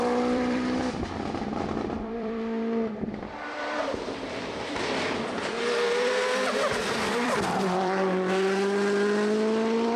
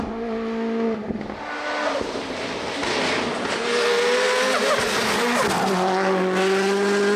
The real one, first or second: second